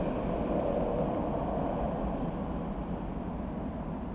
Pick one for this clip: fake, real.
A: real